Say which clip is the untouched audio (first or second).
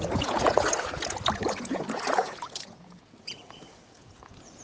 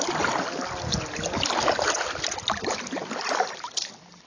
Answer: second